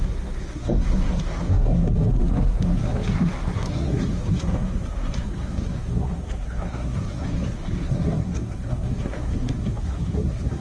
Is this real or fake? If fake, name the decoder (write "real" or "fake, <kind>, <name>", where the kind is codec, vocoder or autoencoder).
fake, codec, SNAC